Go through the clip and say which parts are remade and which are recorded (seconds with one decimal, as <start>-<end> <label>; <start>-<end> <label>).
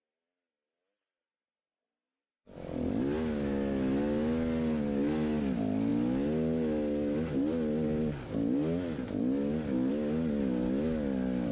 0.0-11.5 recorded